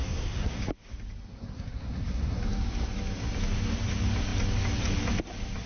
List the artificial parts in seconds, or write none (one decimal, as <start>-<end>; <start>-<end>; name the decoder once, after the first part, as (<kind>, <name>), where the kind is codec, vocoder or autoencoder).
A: 0.0-0.6 (codec, SNAC); 1.3-2.4